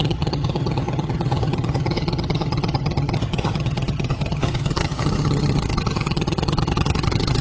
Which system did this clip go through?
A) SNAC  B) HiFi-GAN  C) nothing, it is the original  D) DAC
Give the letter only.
B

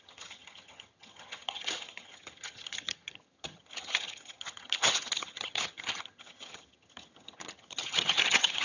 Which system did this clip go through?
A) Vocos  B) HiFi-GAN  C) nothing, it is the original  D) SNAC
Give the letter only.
B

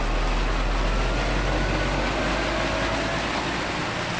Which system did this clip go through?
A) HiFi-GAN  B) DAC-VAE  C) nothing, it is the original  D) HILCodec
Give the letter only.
C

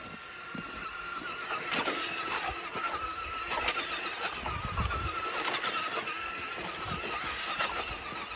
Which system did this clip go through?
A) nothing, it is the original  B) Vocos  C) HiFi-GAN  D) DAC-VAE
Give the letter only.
A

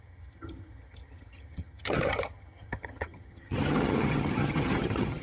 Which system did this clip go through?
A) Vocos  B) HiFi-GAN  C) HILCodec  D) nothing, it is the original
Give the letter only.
B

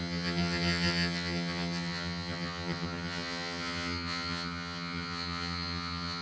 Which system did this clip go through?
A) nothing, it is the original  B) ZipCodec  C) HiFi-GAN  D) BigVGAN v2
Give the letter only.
C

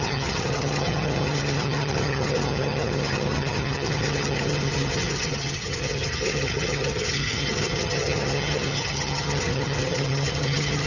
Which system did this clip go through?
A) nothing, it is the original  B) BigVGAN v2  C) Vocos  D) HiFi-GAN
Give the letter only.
D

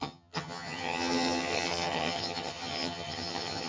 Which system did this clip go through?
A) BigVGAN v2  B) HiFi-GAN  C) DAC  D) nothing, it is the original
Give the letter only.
B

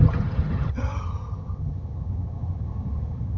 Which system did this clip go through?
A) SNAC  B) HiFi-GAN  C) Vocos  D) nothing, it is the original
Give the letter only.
B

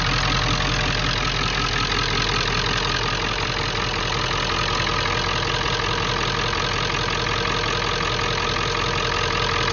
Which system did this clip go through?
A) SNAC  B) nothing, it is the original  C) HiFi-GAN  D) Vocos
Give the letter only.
B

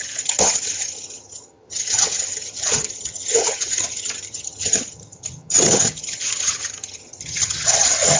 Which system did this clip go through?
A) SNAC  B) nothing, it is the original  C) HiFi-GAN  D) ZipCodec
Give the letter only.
C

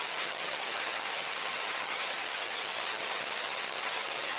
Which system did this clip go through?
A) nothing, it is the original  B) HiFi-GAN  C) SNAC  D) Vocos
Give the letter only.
B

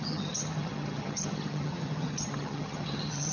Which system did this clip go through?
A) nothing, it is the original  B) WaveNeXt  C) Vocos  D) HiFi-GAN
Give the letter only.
D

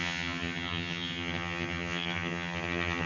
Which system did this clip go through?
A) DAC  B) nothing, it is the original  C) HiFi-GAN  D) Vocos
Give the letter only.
C